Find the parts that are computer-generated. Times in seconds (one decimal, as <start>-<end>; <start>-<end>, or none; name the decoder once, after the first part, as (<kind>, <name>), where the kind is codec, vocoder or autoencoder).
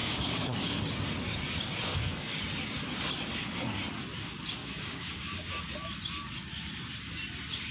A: 0.0-0.8 (codec, DAC); 1.9-2.4; 4.6-5.7